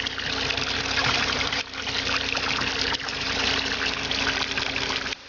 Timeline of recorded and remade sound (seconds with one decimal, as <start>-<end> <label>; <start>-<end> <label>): 0.0-1.0 recorded; 1.0-1.6 remade; 1.6-5.3 recorded